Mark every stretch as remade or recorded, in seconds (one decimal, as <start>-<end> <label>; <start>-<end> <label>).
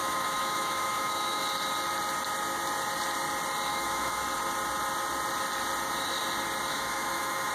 0.0-1.4 remade; 1.4-3.7 recorded; 3.7-4.2 remade; 4.2-6.7 recorded; 6.7-7.5 remade